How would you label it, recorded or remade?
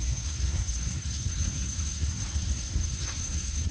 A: remade